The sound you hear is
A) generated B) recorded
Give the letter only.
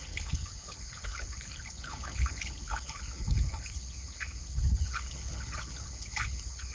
A